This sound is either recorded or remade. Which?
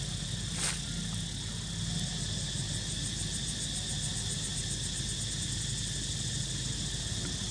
recorded